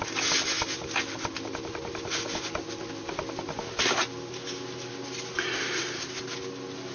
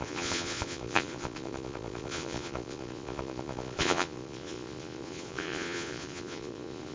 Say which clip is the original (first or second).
first